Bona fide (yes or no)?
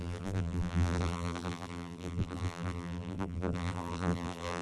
no